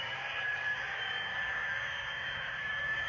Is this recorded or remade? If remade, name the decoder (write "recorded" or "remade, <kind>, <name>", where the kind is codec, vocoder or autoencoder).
remade, codec, DAC